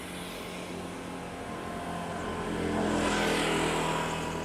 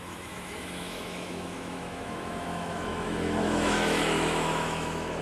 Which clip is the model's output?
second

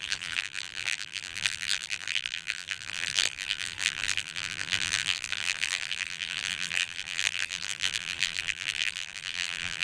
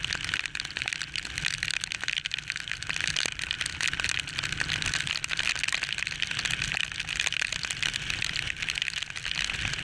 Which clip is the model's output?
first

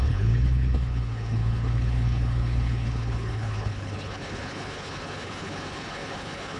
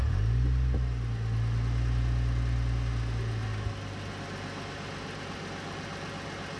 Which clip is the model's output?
first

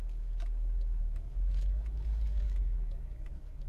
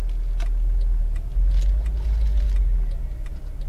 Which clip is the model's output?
first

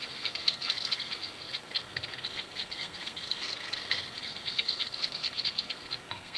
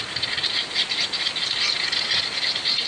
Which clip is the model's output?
first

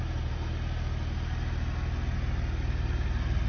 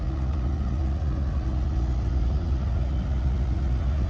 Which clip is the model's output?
second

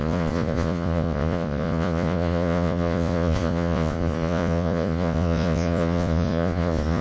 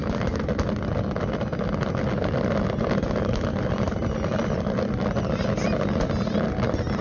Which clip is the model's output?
first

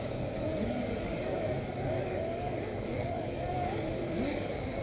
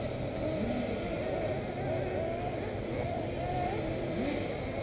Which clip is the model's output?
first